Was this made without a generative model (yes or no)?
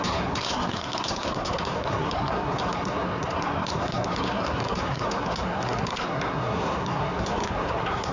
no